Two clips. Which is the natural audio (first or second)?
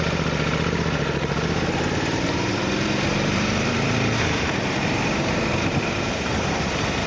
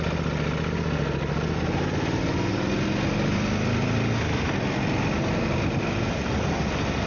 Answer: second